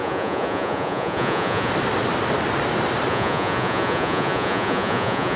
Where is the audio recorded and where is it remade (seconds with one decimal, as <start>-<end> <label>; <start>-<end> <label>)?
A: 0.0-1.7 remade; 1.7-3.1 recorded; 3.1-5.4 remade